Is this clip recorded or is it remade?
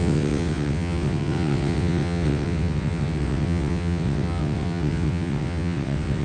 remade